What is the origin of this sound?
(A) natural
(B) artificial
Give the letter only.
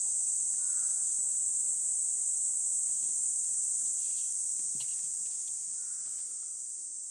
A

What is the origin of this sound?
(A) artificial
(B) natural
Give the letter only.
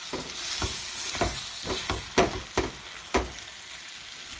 B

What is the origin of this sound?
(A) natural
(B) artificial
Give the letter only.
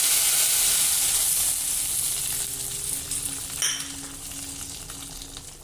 A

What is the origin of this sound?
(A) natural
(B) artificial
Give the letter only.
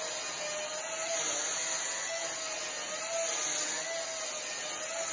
A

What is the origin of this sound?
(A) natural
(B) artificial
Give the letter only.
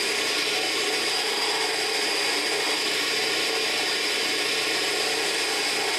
A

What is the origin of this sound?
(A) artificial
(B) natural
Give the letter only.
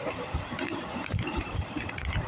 A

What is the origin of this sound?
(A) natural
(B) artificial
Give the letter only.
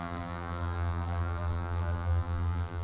B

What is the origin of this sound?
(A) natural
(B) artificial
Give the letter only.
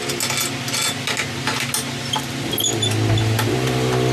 A